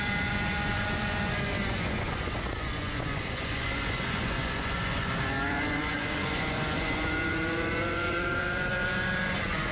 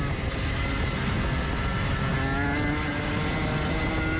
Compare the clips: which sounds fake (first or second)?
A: first